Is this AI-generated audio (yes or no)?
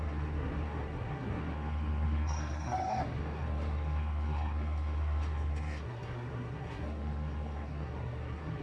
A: yes